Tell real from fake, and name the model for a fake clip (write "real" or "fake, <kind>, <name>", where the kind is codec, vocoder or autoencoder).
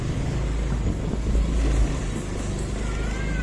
real